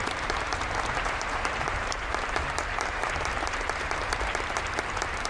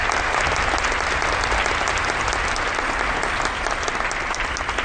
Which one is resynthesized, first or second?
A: first